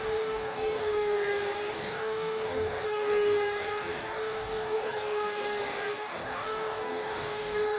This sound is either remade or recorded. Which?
remade